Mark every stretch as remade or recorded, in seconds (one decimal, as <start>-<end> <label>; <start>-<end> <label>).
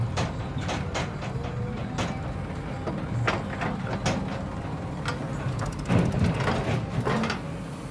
0.0-7.9 recorded